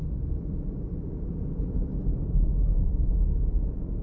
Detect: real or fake real